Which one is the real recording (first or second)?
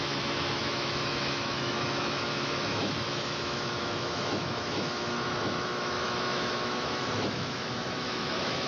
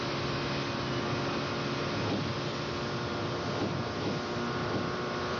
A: second